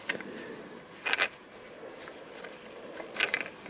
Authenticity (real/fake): real